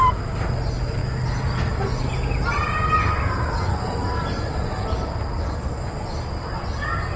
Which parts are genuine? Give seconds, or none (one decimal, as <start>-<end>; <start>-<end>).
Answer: 0.0-7.2